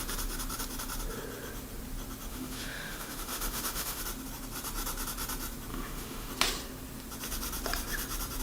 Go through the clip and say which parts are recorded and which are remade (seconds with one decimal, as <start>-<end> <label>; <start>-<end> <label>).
0.0-2.3 recorded; 2.3-4.0 remade; 4.0-5.7 recorded; 5.7-6.3 remade; 6.3-8.4 recorded